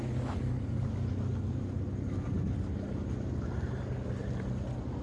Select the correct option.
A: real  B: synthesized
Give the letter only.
A